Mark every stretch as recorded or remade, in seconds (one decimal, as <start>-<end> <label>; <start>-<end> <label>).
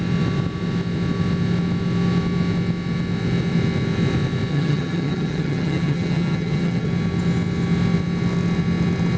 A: 0.0-4.5 recorded; 4.5-6.9 remade; 6.9-9.2 recorded